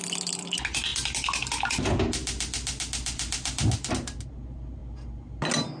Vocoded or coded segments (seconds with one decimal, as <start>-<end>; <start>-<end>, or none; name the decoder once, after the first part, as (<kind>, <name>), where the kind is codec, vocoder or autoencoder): none